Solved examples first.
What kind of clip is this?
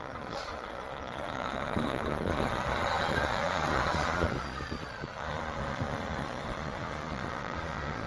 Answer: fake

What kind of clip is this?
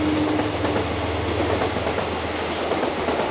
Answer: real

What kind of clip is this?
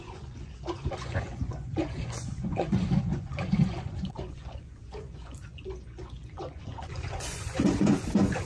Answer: fake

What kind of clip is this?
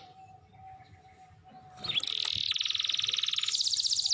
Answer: real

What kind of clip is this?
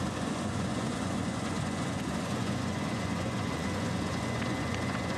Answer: fake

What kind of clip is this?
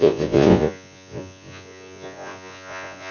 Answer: fake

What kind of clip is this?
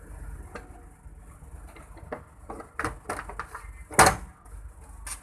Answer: real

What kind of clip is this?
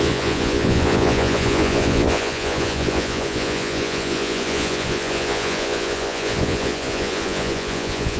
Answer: fake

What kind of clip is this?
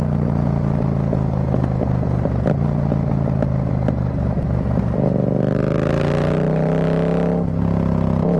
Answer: real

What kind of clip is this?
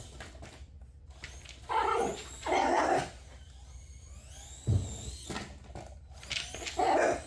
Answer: real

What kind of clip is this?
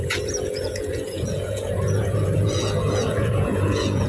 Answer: fake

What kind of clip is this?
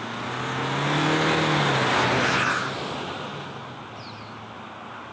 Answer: real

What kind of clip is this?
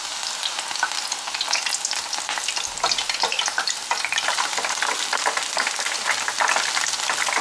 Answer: real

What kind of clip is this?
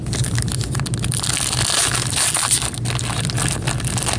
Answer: real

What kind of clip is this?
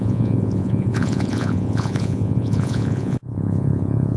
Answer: fake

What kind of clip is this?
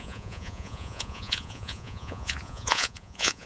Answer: fake